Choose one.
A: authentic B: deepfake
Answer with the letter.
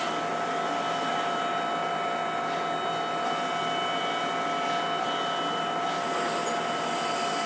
A